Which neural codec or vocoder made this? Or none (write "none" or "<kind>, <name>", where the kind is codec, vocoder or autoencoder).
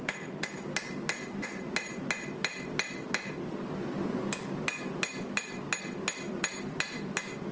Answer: none